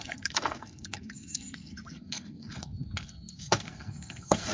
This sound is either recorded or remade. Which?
remade